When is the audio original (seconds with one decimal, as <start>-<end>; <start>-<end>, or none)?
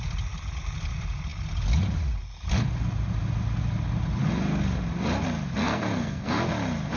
0.0-5.6; 6.4-7.0